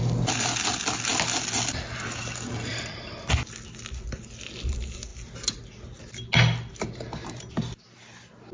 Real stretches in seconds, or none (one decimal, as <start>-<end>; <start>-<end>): 0.0-8.5